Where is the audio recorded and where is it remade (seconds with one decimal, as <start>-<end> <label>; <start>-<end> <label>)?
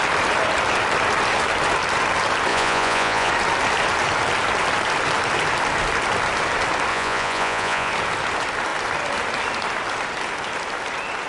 0.0-2.5 recorded; 2.5-3.3 remade; 3.3-6.9 recorded; 6.9-7.9 remade; 7.9-11.3 recorded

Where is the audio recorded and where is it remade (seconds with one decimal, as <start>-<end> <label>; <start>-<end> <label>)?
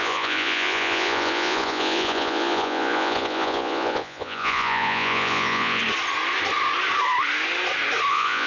0.0-5.8 remade; 5.8-8.1 recorded; 8.1-8.5 remade